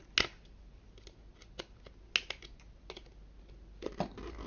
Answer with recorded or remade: recorded